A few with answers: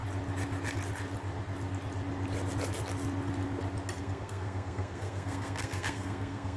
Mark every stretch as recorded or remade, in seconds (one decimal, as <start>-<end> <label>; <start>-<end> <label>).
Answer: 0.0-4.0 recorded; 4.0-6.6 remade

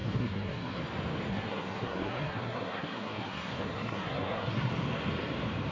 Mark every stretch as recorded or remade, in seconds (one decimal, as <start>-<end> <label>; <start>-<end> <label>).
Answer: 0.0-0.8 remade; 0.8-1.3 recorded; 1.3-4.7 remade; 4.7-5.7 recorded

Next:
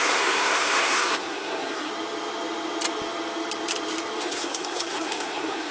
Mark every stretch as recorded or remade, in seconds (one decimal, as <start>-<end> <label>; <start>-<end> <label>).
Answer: 0.0-1.9 remade; 1.9-4.2 recorded; 4.2-5.7 remade

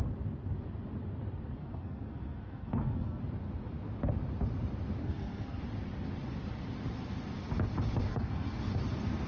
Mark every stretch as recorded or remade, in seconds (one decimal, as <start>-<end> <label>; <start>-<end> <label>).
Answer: 0.0-1.6 recorded; 1.6-3.2 remade; 3.2-5.0 recorded; 5.0-5.6 remade; 5.6-8.1 recorded; 8.1-8.6 remade; 8.6-9.3 recorded

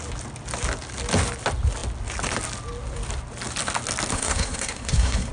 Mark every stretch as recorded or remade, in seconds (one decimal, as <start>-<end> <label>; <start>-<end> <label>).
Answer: 0.0-4.1 recorded; 4.1-5.3 remade

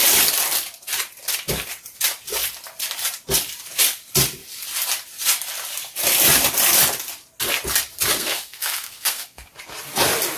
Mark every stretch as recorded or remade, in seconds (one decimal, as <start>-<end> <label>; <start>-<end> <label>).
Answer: 0.0-8.1 recorded; 8.1-9.5 remade; 9.5-10.4 recorded